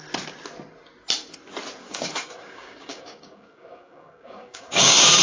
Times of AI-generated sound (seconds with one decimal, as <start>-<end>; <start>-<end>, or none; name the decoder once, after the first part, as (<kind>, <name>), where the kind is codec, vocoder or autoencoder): 1.8-5.2 (codec, DAC)